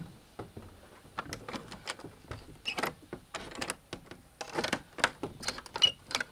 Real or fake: real